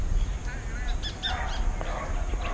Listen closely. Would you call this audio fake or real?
real